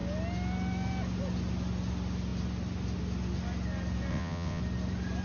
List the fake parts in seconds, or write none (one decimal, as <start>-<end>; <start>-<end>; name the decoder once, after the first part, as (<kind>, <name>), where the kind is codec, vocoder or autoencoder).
4.1-4.6 (vocoder, WaveNeXt)